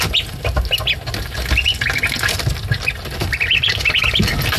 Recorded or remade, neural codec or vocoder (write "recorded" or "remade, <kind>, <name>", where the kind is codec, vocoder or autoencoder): recorded